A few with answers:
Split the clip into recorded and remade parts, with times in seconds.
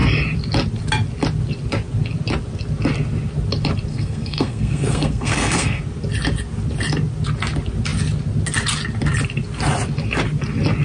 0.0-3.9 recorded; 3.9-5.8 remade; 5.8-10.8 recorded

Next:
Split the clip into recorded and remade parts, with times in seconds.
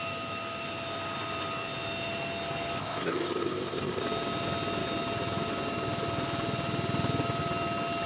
0.0-2.8 recorded; 2.8-4.0 remade; 4.0-8.1 recorded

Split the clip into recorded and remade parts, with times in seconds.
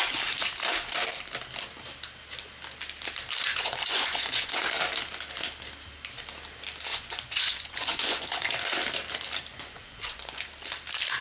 0.0-3.5 recorded; 3.5-4.6 remade; 4.6-6.9 recorded; 6.9-8.5 remade; 8.5-9.5 recorded; 9.5-10.5 remade; 10.5-11.2 recorded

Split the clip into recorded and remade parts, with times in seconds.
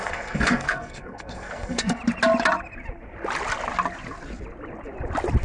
0.0-2.0 remade; 2.0-5.4 recorded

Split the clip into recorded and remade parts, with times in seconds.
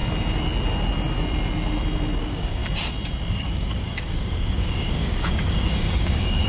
0.0-2.2 recorded; 2.2-2.6 remade; 2.6-3.3 recorded; 3.3-6.5 remade